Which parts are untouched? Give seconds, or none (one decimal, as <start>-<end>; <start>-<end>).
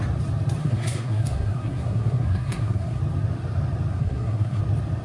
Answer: 0.0-0.6; 3.0-3.9; 4.6-5.0